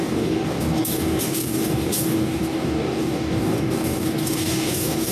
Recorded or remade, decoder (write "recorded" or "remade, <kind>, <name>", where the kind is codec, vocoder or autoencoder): remade, codec, DAC